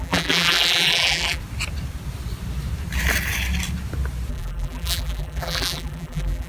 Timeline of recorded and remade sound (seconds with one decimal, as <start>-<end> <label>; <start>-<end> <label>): 0.0-1.4 remade; 1.4-4.3 recorded; 4.3-6.5 remade

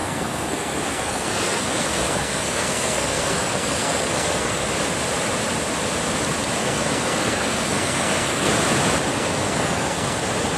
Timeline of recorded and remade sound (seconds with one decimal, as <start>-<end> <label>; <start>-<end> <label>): 0.0-4.7 remade; 4.7-6.6 recorded; 6.6-8.5 remade; 8.5-9.1 recorded; 9.1-10.2 remade; 10.2-10.6 recorded

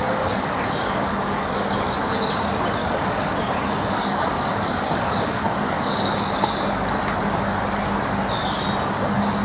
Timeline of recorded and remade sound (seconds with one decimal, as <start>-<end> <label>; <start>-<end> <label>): 0.0-2.0 remade; 2.0-2.8 recorded; 2.8-6.5 remade; 6.5-9.4 recorded

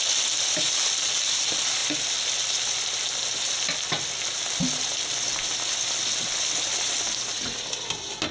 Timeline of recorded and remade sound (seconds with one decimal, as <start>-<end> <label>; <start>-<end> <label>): 0.0-8.3 recorded

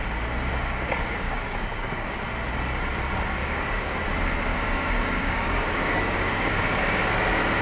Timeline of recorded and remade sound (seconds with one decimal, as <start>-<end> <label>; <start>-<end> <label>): 0.0-0.5 recorded; 0.5-2.2 remade; 2.2-3.4 recorded; 3.4-4.0 remade; 4.0-4.5 recorded; 4.5-7.1 remade; 7.1-7.6 recorded